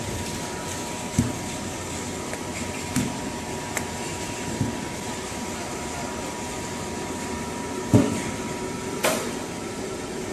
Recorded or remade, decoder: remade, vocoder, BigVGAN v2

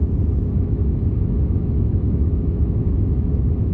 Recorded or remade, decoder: remade, autoencoder, DAC-VAE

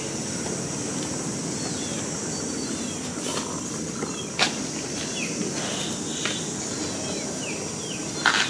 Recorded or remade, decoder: recorded